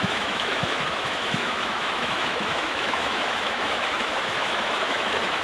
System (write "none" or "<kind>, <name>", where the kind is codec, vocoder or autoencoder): autoencoder, DAC-VAE